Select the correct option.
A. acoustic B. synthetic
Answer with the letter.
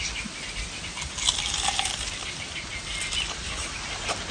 A